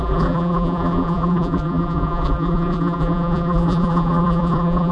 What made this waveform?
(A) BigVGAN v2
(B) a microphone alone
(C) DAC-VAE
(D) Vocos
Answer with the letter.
A